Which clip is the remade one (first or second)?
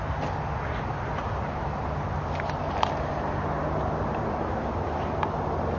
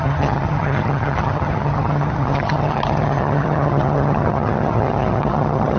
second